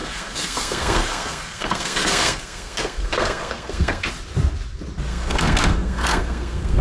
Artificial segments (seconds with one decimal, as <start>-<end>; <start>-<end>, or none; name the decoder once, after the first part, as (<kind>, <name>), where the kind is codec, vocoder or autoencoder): 0.0-4.1 (codec, SNAC); 5.1-6.8